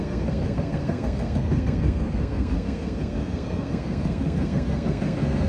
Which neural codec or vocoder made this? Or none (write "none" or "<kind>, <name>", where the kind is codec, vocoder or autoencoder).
codec, SNAC